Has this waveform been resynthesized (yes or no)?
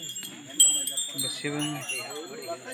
no